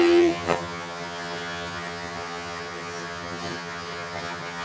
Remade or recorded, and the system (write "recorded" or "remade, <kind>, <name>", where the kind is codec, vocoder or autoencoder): remade, vocoder, HiFi-GAN